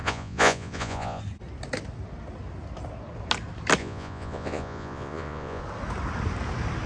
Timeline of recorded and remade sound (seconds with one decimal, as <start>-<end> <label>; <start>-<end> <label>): 0.0-1.2 remade; 1.2-3.8 recorded; 3.8-5.6 remade; 5.6-6.9 recorded